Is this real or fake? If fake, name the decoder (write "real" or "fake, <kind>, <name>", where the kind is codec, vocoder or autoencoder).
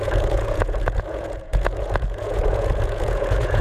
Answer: fake, vocoder, Vocos